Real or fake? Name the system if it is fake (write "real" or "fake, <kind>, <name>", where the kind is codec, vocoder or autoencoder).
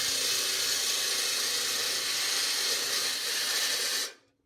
real